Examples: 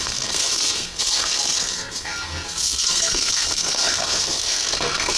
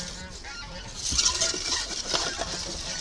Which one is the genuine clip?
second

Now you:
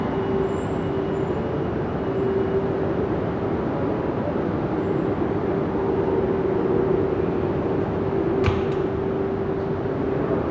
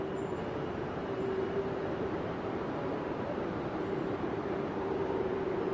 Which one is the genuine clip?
first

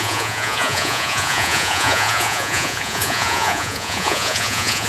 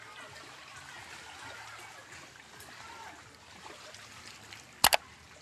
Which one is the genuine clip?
second